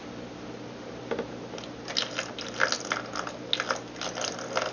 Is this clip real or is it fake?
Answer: real